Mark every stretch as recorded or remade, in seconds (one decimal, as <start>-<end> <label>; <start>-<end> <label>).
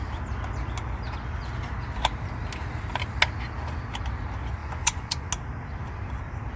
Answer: 0.0-4.6 recorded; 4.6-5.3 remade; 5.3-6.6 recorded